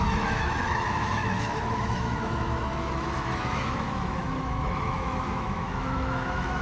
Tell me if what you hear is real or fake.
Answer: fake